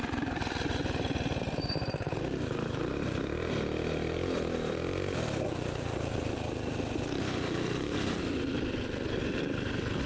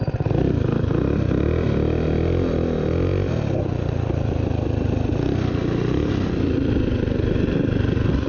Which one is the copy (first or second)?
first